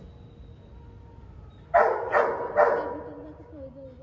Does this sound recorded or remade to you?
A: recorded